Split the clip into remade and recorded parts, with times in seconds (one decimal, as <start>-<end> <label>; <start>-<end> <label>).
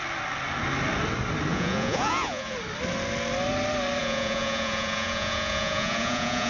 0.0-1.5 recorded; 1.5-2.5 remade; 2.5-4.0 recorded; 4.0-6.5 remade